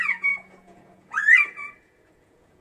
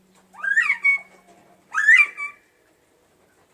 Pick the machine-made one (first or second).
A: first